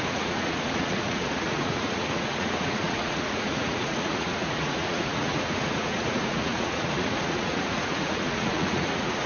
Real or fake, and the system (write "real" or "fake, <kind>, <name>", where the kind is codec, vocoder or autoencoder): fake, vocoder, Vocos